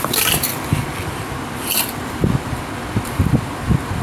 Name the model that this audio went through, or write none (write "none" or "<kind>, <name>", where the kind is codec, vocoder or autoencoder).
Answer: none